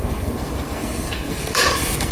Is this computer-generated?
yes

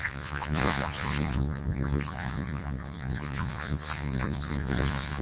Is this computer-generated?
yes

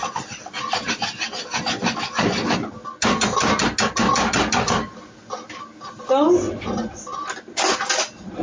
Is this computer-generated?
no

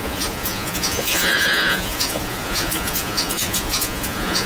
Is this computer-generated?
yes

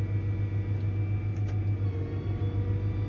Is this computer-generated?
no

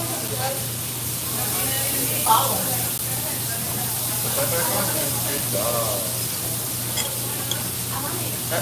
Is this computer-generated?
no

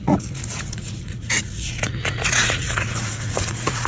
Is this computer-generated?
yes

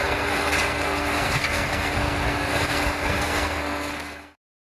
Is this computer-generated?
yes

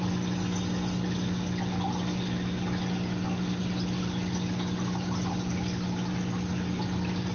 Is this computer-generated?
no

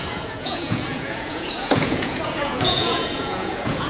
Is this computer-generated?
yes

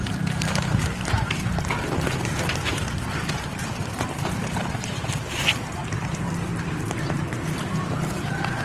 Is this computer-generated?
yes